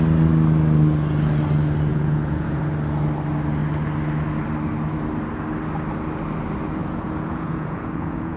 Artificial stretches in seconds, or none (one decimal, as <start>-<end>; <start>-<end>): 1.9-2.6; 6.8-8.4